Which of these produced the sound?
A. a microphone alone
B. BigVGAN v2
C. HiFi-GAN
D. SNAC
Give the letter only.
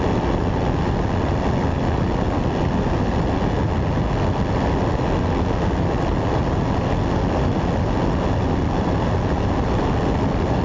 A